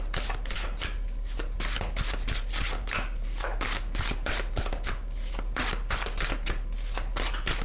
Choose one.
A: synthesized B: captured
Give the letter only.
B